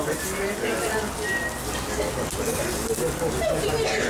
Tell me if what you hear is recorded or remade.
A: recorded